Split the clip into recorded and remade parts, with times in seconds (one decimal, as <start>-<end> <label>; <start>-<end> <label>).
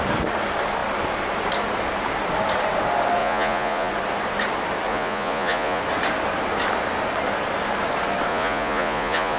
0.0-3.2 recorded; 3.2-3.9 remade; 3.9-4.9 recorded; 4.9-5.8 remade; 5.8-8.3 recorded; 8.3-9.4 remade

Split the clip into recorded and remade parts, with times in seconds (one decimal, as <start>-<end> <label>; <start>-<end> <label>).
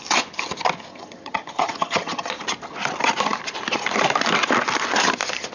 0.0-0.9 recorded; 0.9-2.3 remade; 2.3-5.5 recorded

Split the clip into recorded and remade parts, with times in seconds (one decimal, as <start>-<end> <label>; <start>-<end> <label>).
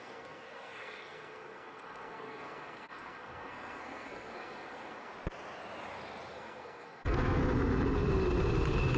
0.0-5.1 remade; 5.1-6.3 recorded; 6.3-7.4 remade; 7.4-9.0 recorded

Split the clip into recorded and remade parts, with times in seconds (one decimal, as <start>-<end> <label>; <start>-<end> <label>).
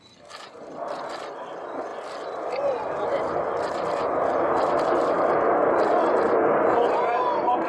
0.0-7.7 recorded